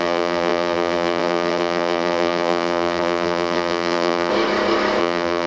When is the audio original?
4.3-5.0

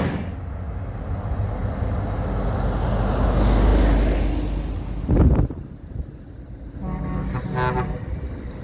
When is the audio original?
0.0-8.6

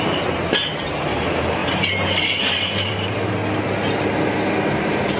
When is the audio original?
3.4-4.6

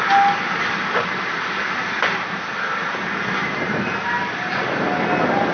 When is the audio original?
0.0-1.8; 2.9-3.4; 3.9-5.5